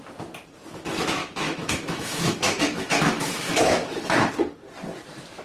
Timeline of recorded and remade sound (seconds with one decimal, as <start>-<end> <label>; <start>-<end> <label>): 0.0-1.2 recorded; 1.2-4.3 remade; 4.3-5.4 recorded